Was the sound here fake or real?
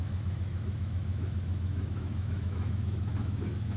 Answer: fake